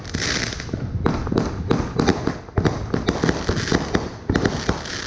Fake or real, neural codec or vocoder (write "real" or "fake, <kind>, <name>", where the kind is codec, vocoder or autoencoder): real